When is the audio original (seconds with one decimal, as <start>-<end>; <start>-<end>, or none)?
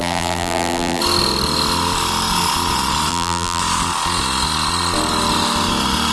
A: 1.0-3.1; 3.6-6.1